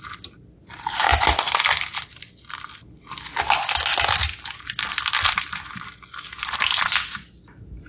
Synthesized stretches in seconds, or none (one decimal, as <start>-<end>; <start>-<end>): none